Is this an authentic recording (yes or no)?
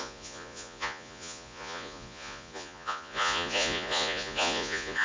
no